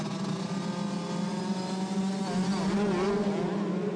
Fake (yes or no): no